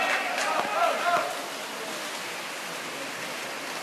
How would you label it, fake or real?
real